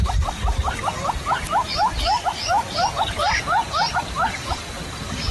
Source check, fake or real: real